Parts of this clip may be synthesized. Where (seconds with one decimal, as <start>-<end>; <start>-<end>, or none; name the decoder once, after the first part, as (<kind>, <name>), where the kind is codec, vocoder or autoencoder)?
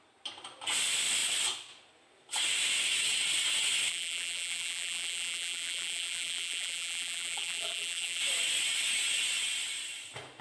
3.9-8.2 (vocoder, BigVGAN v2)